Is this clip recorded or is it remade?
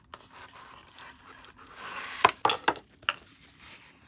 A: recorded